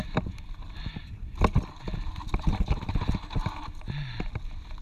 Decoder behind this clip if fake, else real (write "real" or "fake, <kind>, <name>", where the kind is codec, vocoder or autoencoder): real